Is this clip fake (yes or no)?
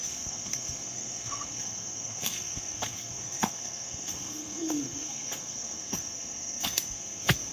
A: yes